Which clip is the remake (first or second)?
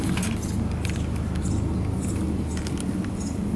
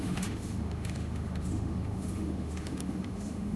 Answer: second